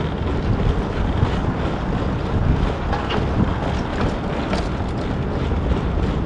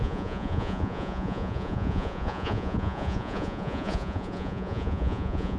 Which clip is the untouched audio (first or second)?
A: first